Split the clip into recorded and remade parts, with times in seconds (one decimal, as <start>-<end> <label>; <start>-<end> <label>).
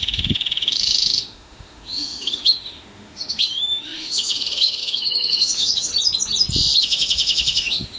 0.0-5.9 remade; 5.9-6.8 recorded; 6.8-8.0 remade